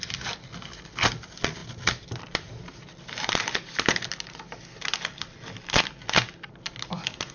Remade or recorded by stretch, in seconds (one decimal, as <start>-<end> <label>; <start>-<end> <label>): 0.0-7.3 recorded